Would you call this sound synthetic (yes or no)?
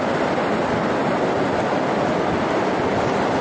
no